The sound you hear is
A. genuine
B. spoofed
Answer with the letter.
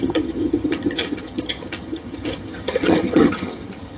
B